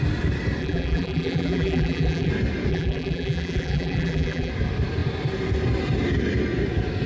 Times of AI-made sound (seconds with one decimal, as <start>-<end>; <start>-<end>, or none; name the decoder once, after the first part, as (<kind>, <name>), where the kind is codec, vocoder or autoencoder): 0.6-2.3 (vocoder, BigVGAN v2); 2.7-4.5